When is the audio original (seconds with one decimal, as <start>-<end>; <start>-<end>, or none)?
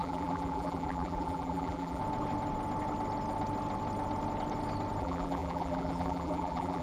2.0-5.0